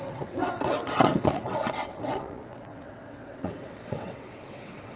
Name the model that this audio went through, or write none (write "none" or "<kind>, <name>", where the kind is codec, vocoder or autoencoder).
vocoder, WaveNeXt